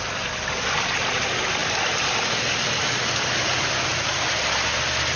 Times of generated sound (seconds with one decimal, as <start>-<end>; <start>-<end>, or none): none